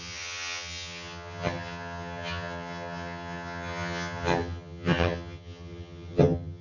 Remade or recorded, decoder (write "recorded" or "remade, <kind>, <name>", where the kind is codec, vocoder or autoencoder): remade, vocoder, HiFi-GAN